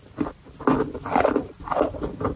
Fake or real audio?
real